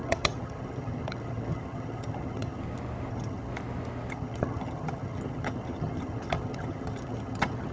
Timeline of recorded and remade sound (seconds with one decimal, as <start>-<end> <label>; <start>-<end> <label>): 0.0-2.6 remade; 2.6-3.1 recorded; 3.1-3.5 remade; 3.5-4.1 recorded; 4.1-7.7 remade